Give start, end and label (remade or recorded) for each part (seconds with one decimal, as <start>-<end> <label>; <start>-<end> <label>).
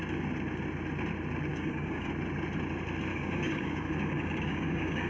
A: 0.0-1.5 recorded; 1.5-2.1 remade; 2.1-3.1 recorded; 3.1-5.1 remade